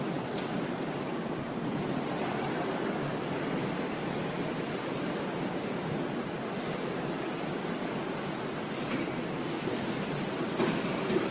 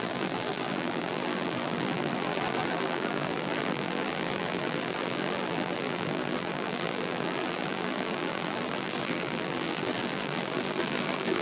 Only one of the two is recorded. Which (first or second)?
first